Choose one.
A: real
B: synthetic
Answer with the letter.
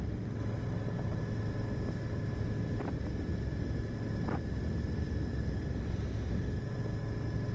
A